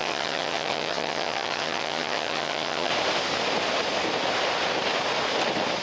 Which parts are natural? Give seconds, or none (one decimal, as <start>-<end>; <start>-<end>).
2.9-5.8